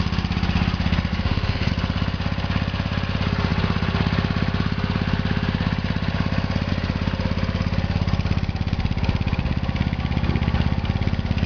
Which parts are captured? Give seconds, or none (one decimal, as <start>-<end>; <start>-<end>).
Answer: 0.0-1.1; 1.7-11.5